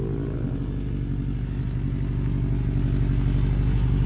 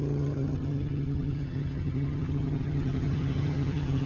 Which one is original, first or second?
first